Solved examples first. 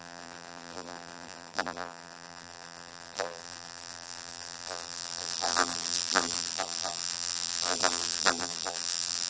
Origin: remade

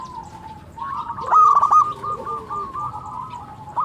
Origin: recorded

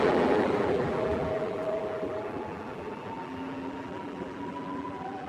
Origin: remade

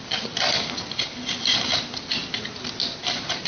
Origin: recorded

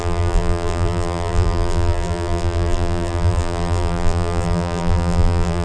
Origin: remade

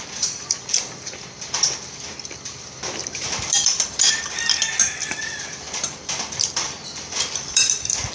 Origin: remade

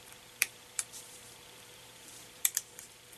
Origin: remade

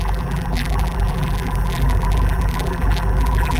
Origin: remade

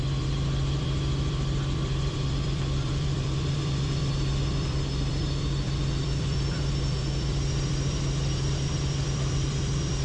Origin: remade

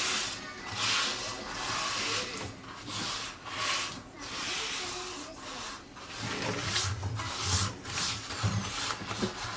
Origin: recorded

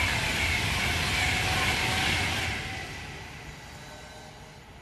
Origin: recorded